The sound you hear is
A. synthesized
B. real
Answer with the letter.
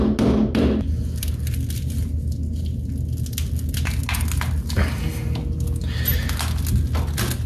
B